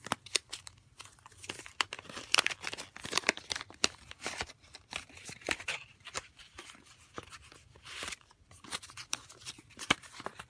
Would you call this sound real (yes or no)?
no